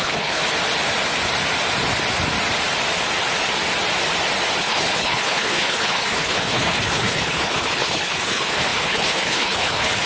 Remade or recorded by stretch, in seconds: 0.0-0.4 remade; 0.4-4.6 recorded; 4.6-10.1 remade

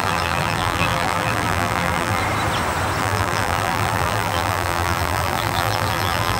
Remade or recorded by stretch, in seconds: 0.0-2.2 remade; 2.2-3.0 recorded; 3.0-6.4 remade

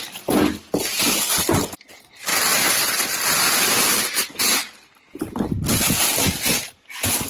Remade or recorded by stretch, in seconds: 0.0-7.3 recorded

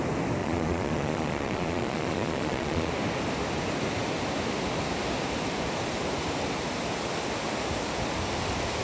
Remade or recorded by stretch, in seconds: 0.0-0.4 recorded; 0.4-2.9 remade; 2.9-8.8 recorded

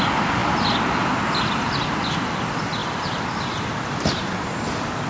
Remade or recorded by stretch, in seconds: 0.0-5.1 recorded